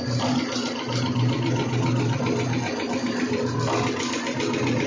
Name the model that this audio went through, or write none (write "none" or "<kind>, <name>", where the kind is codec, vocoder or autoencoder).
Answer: none